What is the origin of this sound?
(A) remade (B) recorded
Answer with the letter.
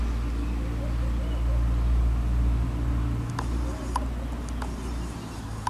B